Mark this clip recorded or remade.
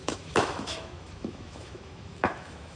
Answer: remade